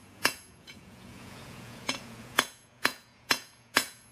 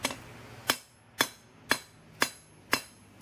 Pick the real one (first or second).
second